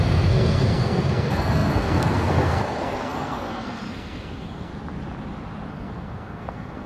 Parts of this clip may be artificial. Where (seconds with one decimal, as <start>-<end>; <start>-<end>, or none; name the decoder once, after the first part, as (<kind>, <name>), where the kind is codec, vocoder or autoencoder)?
0.0-4.7 (codec, SNAC); 5.7-6.9